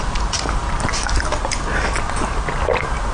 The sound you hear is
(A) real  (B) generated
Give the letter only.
A